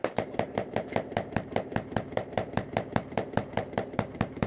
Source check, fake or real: fake